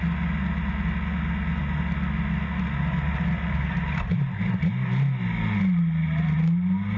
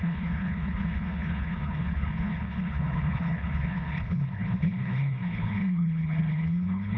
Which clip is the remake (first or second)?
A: second